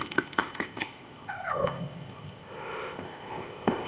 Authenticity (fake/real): fake